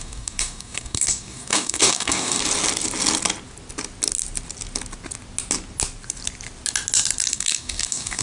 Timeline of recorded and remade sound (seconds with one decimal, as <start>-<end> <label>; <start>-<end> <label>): 0.0-2.4 remade; 2.4-7.3 recorded; 7.3-8.2 remade